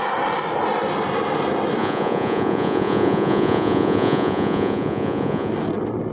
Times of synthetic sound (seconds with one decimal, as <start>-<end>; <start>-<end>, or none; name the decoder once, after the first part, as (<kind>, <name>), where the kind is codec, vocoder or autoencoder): 1.8-5.5 (vocoder, Vocos)